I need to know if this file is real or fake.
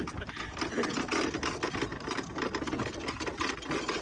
real